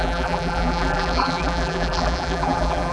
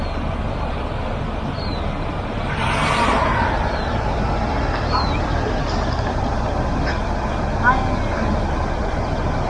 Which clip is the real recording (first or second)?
second